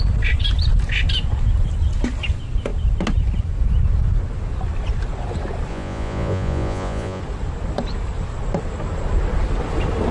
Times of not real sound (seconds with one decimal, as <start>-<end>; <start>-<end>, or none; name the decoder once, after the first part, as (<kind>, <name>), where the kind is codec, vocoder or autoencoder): 5.7-7.2 (vocoder, Vocos)